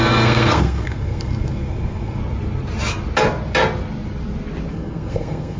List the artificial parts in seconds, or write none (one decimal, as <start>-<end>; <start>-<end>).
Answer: 0.0-2.2; 4.7-5.6